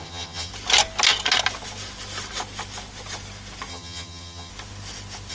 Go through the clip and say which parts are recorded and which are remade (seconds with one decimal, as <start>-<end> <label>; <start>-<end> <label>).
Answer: 0.0-0.5 remade; 0.5-3.7 recorded; 3.7-4.5 remade; 4.5-5.3 recorded